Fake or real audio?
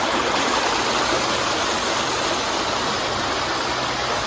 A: real